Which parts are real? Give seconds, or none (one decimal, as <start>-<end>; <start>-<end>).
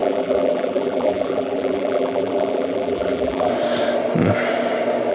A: 3.5-5.1